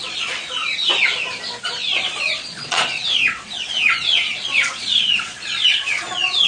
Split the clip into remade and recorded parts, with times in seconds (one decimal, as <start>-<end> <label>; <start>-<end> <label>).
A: 0.0-0.6 remade; 0.6-1.6 recorded; 1.6-6.5 remade